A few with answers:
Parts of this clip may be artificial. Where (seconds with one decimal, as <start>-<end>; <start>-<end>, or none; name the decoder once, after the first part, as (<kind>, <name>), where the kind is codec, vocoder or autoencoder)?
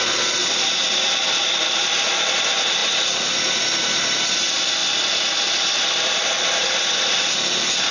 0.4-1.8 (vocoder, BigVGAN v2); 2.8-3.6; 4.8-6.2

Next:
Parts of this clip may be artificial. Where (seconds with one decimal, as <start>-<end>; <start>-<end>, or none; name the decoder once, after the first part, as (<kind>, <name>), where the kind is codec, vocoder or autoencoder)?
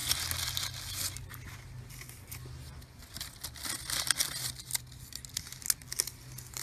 none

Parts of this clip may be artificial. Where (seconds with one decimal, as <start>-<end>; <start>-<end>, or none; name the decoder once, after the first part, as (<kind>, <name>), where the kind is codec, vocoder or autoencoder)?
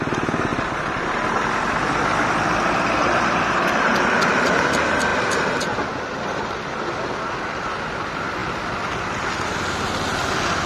0.5-4.3 (vocoder, BigVGAN v2); 5.1-7.0